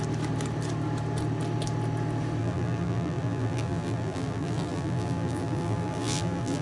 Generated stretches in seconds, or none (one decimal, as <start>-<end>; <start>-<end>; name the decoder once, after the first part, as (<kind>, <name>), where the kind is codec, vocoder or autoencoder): 2.4-6.6 (vocoder, BigVGAN v2)

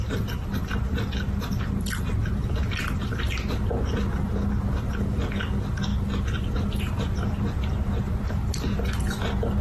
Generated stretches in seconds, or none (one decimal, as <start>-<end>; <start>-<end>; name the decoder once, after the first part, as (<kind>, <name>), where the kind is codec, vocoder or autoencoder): none

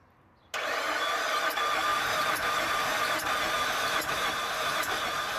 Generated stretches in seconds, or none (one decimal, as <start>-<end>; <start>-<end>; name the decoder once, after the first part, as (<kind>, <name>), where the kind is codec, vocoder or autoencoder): 1.9-4.9 (vocoder, BigVGAN v2)

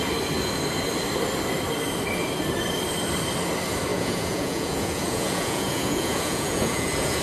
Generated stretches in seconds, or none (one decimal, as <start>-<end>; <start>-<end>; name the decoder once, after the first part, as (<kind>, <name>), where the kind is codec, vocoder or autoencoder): 3.9-7.2 (vocoder, Vocos)

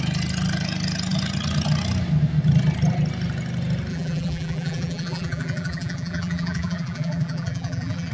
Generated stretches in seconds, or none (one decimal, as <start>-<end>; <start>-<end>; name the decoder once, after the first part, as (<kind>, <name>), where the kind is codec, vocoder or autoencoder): 3.9-8.1 (vocoder, BigVGAN v2)

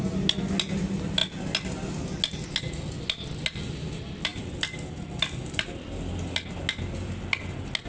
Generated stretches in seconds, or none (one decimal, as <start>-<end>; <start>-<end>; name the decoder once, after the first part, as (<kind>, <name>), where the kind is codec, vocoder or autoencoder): none